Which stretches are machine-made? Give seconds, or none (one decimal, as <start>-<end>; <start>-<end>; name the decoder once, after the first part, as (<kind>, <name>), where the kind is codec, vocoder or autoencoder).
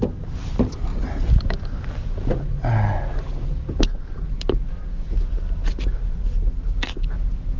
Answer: none